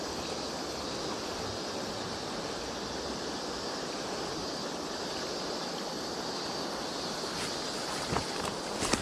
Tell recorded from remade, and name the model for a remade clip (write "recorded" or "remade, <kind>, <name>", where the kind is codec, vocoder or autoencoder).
recorded